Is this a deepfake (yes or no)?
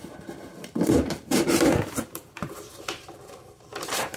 yes